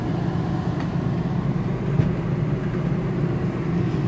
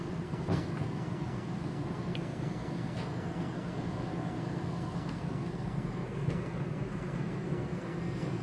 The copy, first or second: second